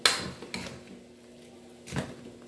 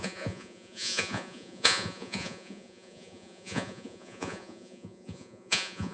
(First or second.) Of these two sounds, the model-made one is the second